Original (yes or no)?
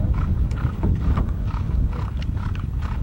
no